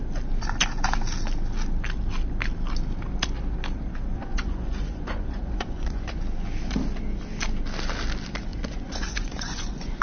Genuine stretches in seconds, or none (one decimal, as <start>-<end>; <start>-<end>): 0.0-4.1; 6.2-8.5